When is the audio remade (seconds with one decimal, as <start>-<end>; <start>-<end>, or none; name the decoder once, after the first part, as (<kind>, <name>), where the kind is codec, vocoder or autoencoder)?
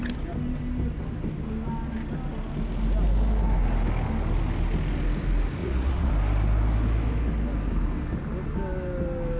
5.6-6.1 (vocoder, Vocos)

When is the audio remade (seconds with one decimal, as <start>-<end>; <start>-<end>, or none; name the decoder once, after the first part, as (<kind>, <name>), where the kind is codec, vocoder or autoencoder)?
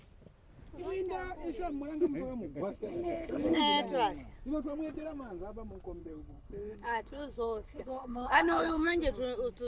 2.5-3.6 (codec, HILCodec); 6.0-9.0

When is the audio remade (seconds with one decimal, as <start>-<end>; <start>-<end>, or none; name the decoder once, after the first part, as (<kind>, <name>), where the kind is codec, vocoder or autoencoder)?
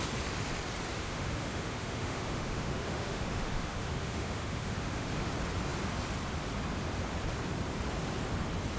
1.0-5.3 (autoencoder, DAC-VAE)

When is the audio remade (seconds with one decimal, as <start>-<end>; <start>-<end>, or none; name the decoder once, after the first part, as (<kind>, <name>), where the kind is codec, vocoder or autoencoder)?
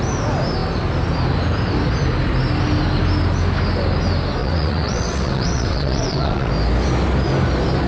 4.4-6.5 (vocoder, WaveNeXt)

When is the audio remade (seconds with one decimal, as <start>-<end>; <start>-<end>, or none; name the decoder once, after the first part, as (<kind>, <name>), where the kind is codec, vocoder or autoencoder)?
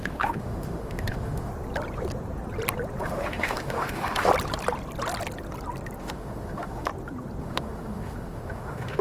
0.0-1.5 (autoencoder, DAC-VAE); 3.0-4.3; 6.0-6.9; 7.4-9.0